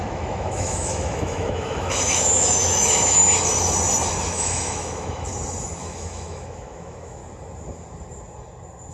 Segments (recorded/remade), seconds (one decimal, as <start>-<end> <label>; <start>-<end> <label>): 0.0-3.2 remade; 3.2-4.3 recorded; 4.3-5.3 remade; 5.3-5.8 recorded; 5.8-7.2 remade; 7.2-8.9 recorded